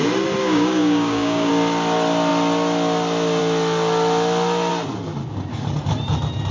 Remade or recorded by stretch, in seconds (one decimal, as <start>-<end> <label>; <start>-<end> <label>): 0.0-0.4 recorded; 0.4-1.5 remade; 1.5-6.5 recorded